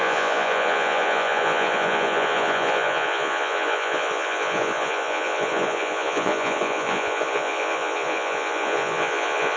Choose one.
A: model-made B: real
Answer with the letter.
A